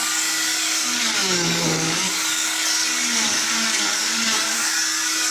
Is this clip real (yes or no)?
no